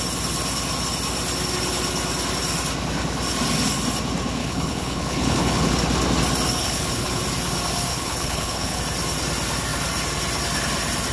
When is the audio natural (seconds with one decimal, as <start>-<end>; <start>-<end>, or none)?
0.0-4.4; 5.7-6.6; 7.2-7.9; 8.8-11.1